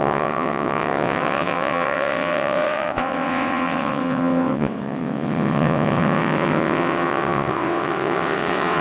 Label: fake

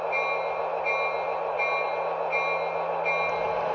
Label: real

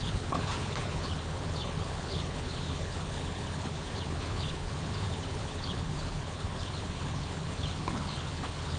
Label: fake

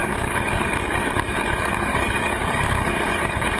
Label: fake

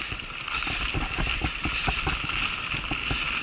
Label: real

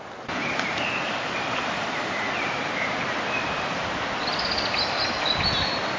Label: real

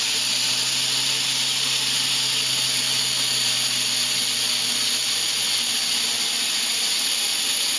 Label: real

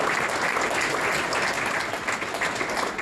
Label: real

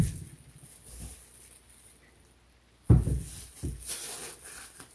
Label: real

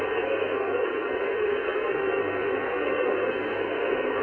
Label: fake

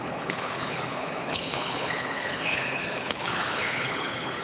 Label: fake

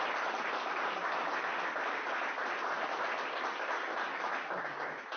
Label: real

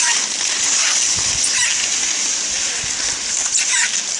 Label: real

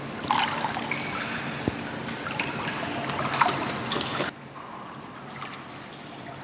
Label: real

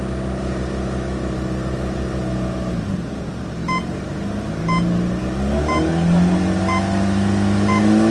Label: real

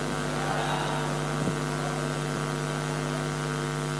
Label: real